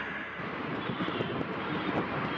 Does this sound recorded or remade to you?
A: remade